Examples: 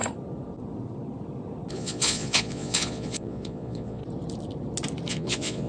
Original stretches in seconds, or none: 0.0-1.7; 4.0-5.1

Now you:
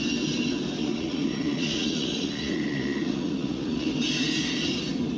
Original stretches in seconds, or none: 0.0-0.8; 3.9-5.2

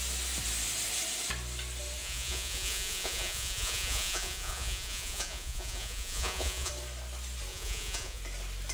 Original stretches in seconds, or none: 0.0-2.0; 6.7-7.5; 8.2-8.7

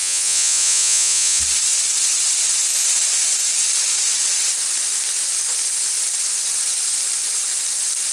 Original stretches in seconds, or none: 1.4-8.1

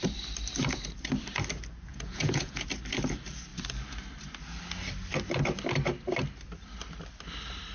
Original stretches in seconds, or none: 0.0-1.9; 2.7-7.7